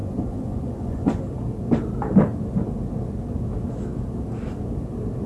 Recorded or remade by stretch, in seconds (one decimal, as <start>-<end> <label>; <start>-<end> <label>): 0.0-1.2 remade; 1.2-5.3 recorded